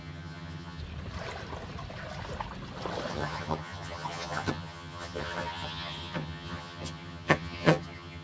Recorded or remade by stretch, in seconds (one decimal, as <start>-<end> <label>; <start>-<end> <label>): 0.0-0.8 remade; 0.8-3.1 recorded; 3.1-8.2 remade